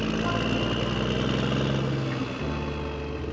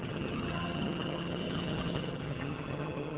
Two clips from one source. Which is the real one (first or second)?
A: first